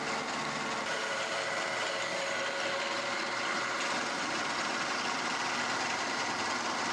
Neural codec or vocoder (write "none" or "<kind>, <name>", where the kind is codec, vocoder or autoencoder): none